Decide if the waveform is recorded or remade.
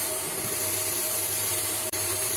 remade